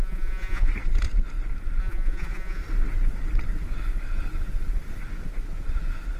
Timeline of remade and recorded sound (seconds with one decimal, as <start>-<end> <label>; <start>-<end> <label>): 0.0-0.7 remade; 0.7-1.8 recorded; 1.8-2.6 remade; 2.6-6.2 recorded